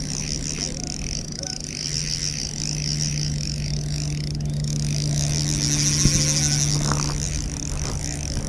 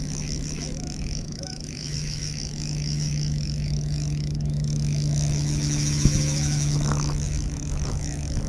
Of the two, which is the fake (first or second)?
second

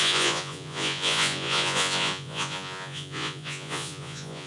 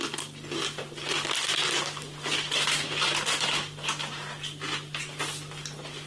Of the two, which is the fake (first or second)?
first